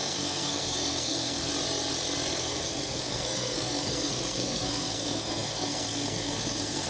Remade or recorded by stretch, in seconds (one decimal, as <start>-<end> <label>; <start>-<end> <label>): 0.0-1.5 remade; 1.5-2.3 recorded; 2.3-6.9 remade